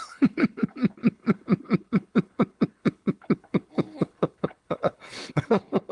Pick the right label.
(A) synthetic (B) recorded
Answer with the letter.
A